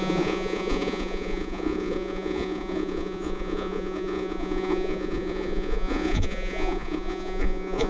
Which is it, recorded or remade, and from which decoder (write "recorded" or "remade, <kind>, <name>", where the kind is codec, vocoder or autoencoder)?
remade, vocoder, Vocos